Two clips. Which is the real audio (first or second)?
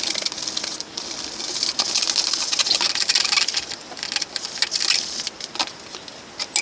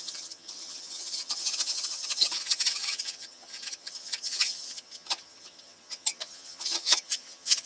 first